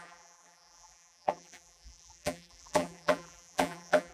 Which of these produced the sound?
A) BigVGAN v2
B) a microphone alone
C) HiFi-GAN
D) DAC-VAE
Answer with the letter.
A